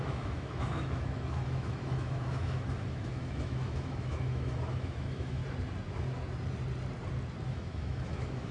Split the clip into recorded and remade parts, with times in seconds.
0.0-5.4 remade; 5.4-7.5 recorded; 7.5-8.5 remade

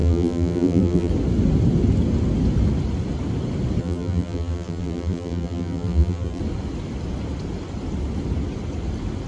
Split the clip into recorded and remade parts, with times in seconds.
0.0-1.1 remade; 1.1-3.8 recorded; 3.8-6.4 remade; 6.4-9.3 recorded

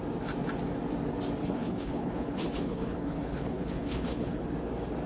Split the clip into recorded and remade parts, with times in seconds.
0.0-1.4 recorded; 1.4-4.5 remade; 4.5-5.1 recorded

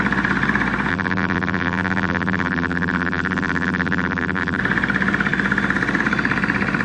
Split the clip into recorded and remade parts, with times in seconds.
0.0-0.9 recorded; 0.9-4.6 remade; 4.6-6.8 recorded

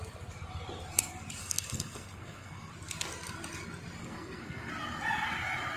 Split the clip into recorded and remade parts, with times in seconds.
0.0-1.4 recorded; 1.4-2.7 remade; 2.7-4.0 recorded; 4.0-4.7 remade; 4.7-5.8 recorded

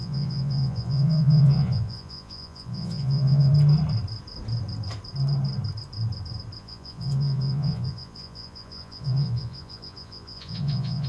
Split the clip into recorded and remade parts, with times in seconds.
0.0-3.5 remade; 3.5-6.6 recorded; 6.6-11.1 remade

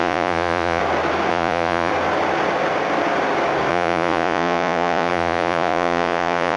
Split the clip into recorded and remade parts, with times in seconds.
0.0-0.8 remade; 0.8-1.3 recorded; 1.3-1.9 remade; 1.9-3.7 recorded; 3.7-6.6 remade